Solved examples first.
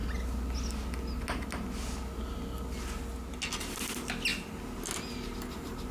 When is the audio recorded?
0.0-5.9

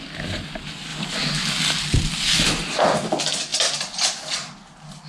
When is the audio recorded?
0.0-5.1

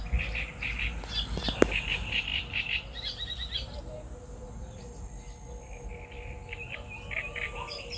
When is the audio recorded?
0.0-8.0

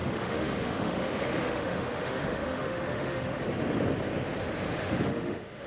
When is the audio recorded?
3.4-4.4